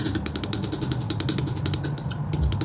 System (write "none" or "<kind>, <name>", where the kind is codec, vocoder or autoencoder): none